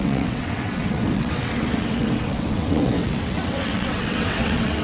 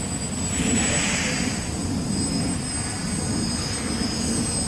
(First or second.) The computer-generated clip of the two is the first